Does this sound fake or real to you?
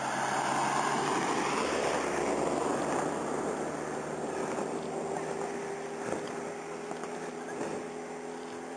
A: fake